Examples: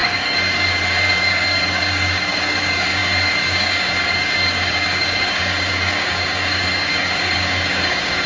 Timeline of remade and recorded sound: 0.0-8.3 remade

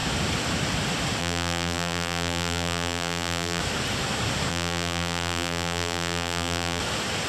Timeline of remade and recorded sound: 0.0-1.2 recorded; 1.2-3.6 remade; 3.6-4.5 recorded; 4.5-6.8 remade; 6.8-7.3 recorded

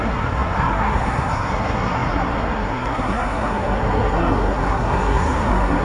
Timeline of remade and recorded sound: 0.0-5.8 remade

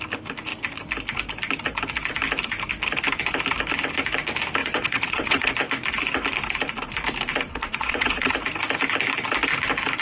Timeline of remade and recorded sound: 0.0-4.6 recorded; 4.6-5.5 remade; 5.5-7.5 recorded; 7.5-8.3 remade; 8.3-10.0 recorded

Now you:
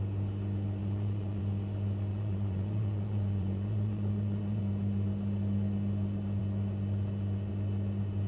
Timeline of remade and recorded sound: 0.0-0.8 recorded; 0.8-1.4 remade; 1.4-2.1 recorded; 2.1-4.6 remade; 4.6-8.3 recorded

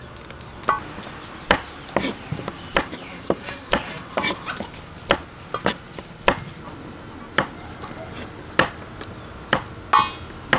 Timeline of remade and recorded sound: 0.0-2.7 recorded; 2.7-4.6 remade; 4.6-10.6 recorded